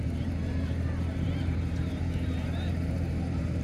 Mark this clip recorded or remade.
remade